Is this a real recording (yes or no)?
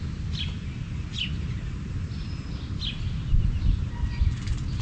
yes